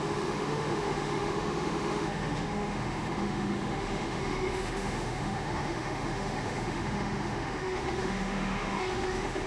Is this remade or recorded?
remade